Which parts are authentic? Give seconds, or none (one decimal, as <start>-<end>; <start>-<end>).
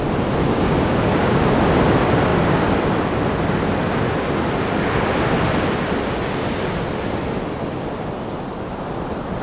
0.0-0.4; 1.7-9.4